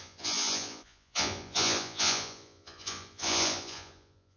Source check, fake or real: fake